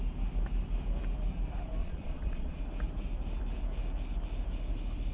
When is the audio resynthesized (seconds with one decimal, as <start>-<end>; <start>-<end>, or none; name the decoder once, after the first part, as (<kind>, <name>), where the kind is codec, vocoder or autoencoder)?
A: 1.8-2.6 (vocoder, Vocos)